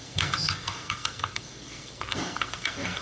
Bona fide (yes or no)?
no